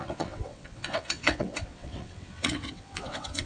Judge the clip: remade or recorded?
remade